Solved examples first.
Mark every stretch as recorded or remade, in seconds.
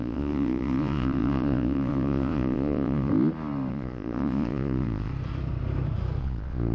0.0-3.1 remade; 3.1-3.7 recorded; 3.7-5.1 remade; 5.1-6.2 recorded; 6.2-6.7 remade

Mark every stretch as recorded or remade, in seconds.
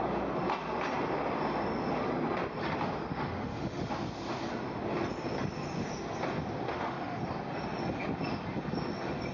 0.0-3.1 recorded; 3.1-3.9 remade; 3.9-6.7 recorded; 6.7-7.2 remade; 7.2-9.3 recorded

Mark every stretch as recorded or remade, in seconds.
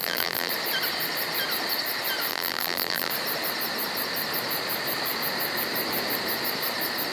0.0-0.5 remade; 0.5-2.3 recorded; 2.3-3.1 remade; 3.1-7.1 recorded